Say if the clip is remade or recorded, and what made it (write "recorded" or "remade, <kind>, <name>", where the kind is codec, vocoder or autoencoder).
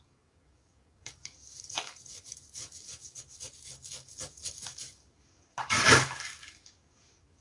remade, codec, DAC